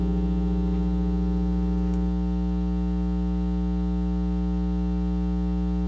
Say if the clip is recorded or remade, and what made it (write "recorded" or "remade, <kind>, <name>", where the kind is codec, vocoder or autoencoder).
recorded